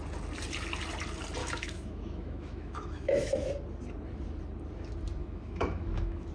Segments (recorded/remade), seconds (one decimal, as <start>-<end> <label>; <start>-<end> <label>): 0.0-1.4 recorded; 1.4-3.5 remade; 3.5-5.2 recorded; 5.2-6.3 remade